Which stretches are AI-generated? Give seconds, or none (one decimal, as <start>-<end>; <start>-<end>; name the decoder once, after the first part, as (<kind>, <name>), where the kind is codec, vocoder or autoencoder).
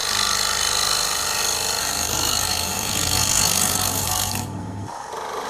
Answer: 1.8-5.1 (codec, SNAC)